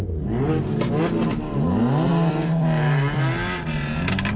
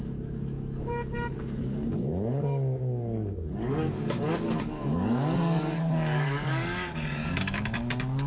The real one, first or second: first